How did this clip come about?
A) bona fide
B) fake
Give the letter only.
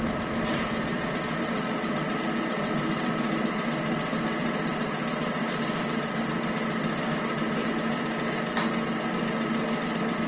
A